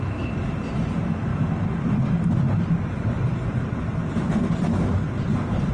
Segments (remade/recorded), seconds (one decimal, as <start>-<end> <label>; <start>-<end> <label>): 0.0-5.7 recorded